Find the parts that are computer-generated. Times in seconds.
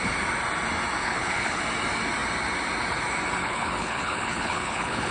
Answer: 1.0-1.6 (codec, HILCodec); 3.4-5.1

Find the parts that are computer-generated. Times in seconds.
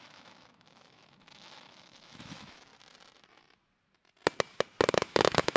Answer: 0.0-2.7 (autoencoder, DAC-VAE); 4.9-5.6